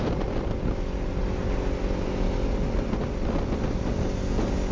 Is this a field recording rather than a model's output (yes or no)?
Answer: yes